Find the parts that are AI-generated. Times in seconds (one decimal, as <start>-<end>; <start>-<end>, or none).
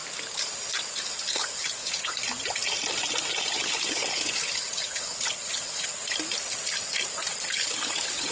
0.9-2.2; 3.5-6.0; 7.5-8.3